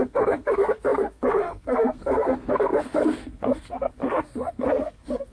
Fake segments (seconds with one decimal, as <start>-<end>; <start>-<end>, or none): 0.0-5.3